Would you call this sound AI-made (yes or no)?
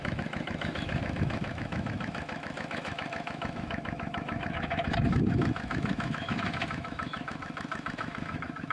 yes